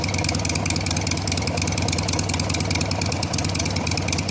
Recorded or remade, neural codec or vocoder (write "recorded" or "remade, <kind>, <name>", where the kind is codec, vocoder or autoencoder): recorded